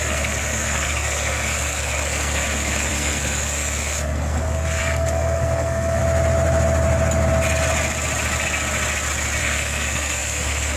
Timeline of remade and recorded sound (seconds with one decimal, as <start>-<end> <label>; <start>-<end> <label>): 0.0-6.0 remade; 6.0-9.4 recorded; 9.4-10.8 remade